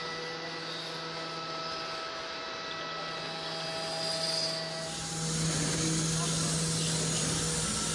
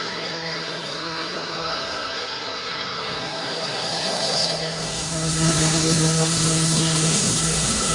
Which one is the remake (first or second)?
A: second